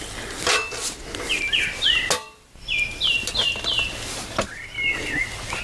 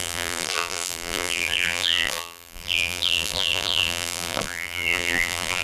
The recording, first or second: first